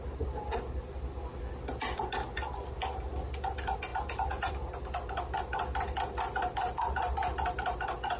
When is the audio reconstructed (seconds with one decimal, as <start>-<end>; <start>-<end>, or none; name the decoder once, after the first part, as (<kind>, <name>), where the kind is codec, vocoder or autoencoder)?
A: none